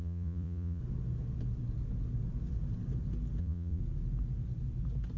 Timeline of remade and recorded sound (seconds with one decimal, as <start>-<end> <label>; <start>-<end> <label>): 0.0-0.8 remade; 0.8-3.4 recorded; 3.4-3.8 remade; 3.8-5.2 recorded